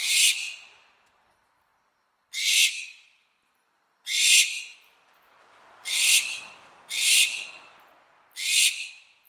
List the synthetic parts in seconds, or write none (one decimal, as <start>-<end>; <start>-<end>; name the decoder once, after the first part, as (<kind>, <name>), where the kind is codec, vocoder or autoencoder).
1.2-1.7 (vocoder, BigVGAN v2); 2.7-7.7; 8.9-9.3